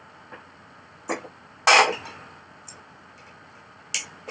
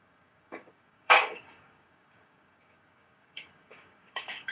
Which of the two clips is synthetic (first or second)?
second